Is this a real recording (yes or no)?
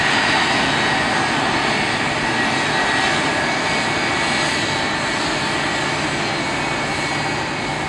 yes